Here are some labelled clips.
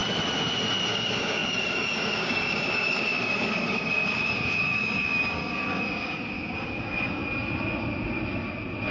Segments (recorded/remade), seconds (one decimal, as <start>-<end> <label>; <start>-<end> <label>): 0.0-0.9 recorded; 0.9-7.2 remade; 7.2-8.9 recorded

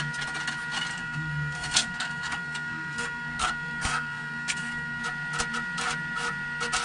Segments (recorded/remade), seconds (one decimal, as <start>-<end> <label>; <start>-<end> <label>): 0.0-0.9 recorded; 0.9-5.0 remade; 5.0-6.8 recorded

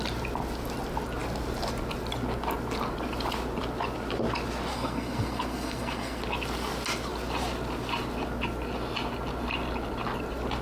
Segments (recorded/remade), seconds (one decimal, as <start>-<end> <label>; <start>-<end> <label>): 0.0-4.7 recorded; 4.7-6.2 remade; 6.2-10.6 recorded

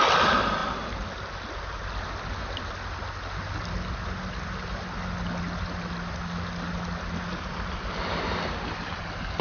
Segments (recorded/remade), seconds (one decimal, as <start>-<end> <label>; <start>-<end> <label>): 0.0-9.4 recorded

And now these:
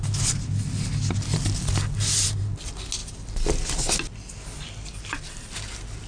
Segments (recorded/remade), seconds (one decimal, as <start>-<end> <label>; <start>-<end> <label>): 0.0-6.1 recorded